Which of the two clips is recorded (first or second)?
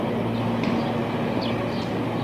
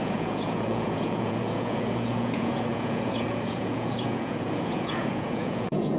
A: first